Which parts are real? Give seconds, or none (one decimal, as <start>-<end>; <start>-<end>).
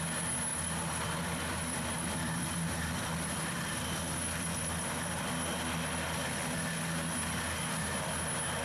0.0-0.5; 5.3-8.6